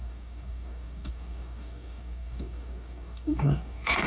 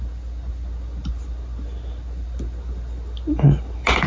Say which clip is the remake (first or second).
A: first